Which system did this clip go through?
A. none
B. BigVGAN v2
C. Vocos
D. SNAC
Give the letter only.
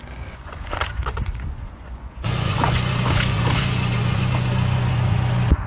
C